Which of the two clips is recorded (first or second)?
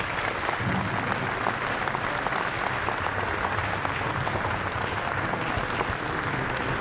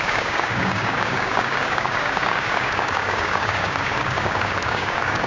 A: first